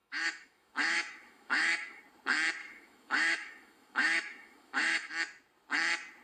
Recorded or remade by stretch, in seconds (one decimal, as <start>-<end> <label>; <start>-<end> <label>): 0.0-2.0 remade; 2.0-2.6 recorded; 2.6-5.1 remade; 5.1-6.2 recorded